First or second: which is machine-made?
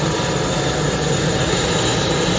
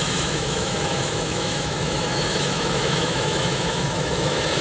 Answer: second